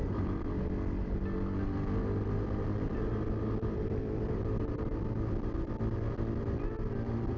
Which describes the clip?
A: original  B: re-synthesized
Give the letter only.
A